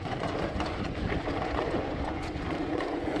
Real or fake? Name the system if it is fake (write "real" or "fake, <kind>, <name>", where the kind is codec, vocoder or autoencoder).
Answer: fake, vocoder, Vocos